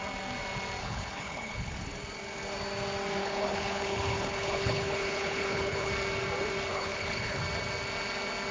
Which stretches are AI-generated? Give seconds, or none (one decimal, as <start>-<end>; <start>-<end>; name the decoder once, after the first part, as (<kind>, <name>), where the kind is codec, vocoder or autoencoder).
0.8-1.7 (codec, HILCodec); 3.2-5.9; 6.7-7.4